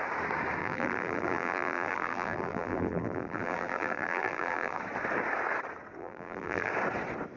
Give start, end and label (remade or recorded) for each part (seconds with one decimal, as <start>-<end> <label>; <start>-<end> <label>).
0.0-0.6 recorded; 0.6-4.8 remade; 4.8-6.0 recorded; 6.0-6.7 remade; 6.7-7.4 recorded